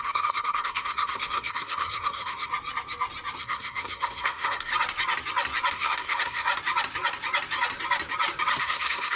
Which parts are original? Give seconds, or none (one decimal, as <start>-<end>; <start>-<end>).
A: 2.5-3.4; 4.7-5.7; 6.5-8.6